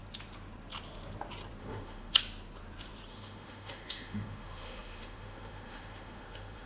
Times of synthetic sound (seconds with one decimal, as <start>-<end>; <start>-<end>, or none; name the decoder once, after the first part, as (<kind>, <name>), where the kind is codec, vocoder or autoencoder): 1.6-2.2 (autoencoder, DAC-VAE); 3.1-6.7